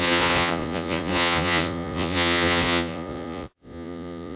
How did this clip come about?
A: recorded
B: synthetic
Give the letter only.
B